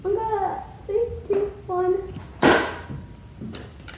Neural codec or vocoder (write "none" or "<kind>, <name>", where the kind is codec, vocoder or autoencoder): none